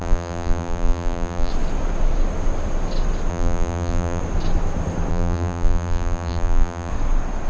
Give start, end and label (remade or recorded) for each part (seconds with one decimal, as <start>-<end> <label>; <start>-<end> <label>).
0.0-1.5 remade; 1.5-3.3 recorded; 3.3-4.2 remade; 4.2-5.1 recorded; 5.1-6.9 remade; 6.9-7.5 recorded